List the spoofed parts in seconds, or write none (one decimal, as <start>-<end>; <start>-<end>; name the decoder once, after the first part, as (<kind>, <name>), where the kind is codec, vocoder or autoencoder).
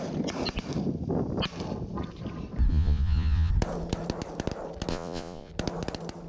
2.7-3.5 (vocoder, Vocos); 4.9-5.5